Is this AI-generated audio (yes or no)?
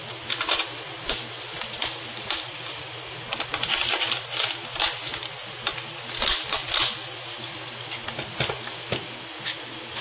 no